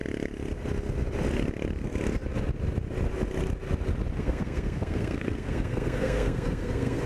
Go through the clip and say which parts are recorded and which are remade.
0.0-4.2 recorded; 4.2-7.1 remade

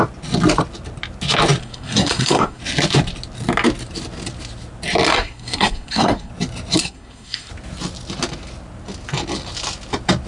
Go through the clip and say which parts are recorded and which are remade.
0.0-1.6 recorded; 1.6-2.6 remade; 2.6-5.1 recorded; 5.1-6.3 remade; 6.3-6.8 recorded; 6.8-7.5 remade; 7.5-10.3 recorded